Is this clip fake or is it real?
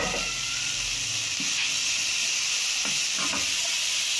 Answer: real